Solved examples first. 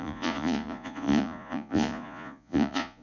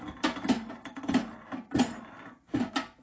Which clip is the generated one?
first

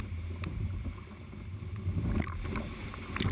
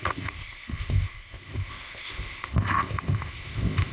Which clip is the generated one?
second